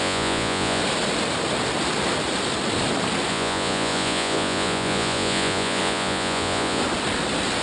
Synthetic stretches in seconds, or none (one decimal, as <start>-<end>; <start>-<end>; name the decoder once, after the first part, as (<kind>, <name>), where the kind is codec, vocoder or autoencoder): 0.0-0.8 (vocoder, Vocos); 3.3-6.8